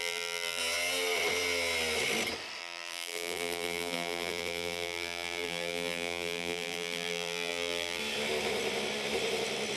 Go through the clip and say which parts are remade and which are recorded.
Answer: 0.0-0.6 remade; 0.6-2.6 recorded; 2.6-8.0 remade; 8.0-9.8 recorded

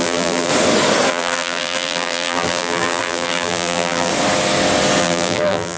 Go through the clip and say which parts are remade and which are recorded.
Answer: 0.0-0.5 remade; 0.5-1.1 recorded; 1.1-4.1 remade; 4.1-5.0 recorded; 5.0-5.8 remade

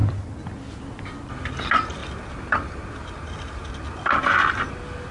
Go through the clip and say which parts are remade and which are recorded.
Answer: 0.0-5.1 recorded